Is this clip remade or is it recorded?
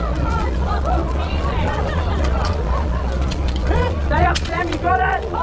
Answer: remade